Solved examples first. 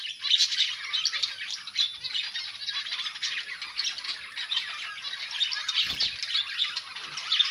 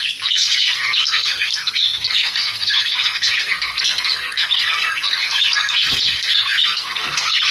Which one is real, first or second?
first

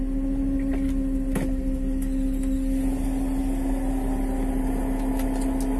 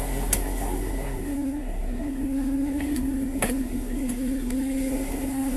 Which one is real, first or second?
first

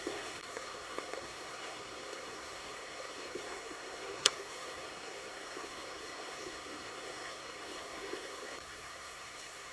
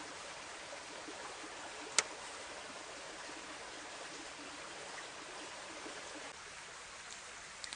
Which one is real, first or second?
second